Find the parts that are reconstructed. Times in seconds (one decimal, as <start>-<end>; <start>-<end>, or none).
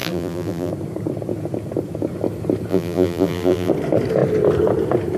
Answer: 0.0-0.7; 2.7-3.7